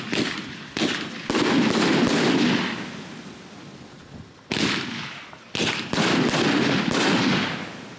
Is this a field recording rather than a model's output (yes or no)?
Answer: yes